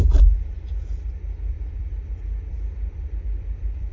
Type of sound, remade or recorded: remade